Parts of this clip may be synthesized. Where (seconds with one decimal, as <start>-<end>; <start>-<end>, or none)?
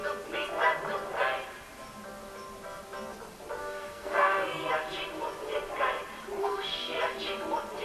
3.6-4.7; 6.4-7.0